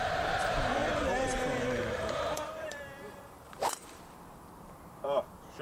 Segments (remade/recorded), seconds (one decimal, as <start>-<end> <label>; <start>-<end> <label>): 0.0-5.6 remade